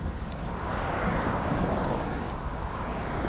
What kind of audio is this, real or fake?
fake